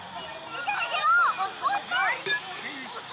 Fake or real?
real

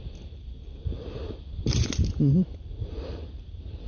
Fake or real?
fake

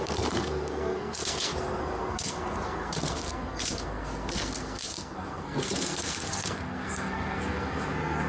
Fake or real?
fake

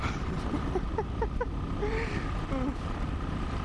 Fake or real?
real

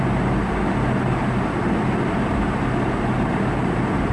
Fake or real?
real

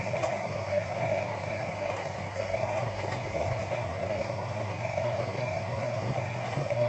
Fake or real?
fake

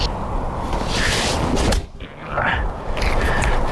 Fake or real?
real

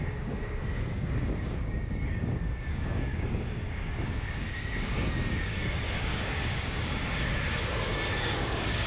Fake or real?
fake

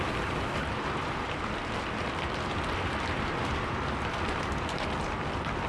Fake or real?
fake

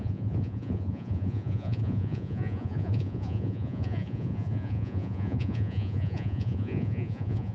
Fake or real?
fake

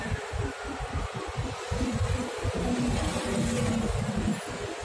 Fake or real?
real